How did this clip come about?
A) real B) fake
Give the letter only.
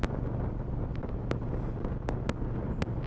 A